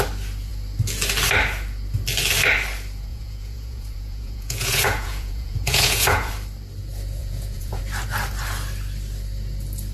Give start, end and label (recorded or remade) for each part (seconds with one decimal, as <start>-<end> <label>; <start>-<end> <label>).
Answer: 0.0-3.1 recorded; 3.1-6.3 remade; 6.3-7.2 recorded; 7.2-7.8 remade; 7.8-9.9 recorded